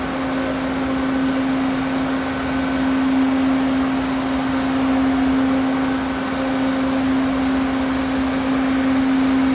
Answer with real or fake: real